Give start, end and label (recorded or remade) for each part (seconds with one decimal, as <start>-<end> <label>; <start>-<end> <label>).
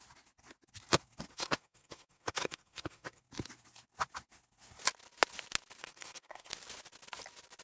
0.0-1.3 recorded; 1.3-3.2 remade; 3.2-5.8 recorded; 5.8-6.5 remade; 6.5-7.6 recorded